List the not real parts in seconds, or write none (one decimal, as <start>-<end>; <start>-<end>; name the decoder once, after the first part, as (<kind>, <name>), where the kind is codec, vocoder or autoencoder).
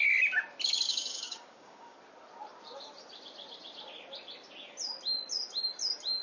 0.9-2.0 (codec, DAC)